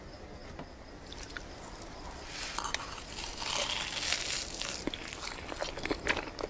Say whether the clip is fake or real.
real